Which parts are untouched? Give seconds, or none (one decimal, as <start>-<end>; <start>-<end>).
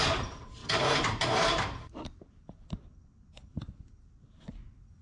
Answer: 0.0-0.6; 2.4-5.0